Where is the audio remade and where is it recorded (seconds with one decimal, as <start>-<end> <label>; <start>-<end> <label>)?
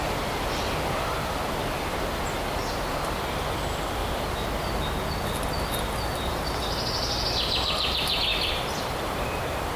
0.0-8.3 recorded; 8.3-9.2 remade; 9.2-9.8 recorded